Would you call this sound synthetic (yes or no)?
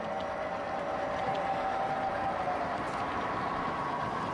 no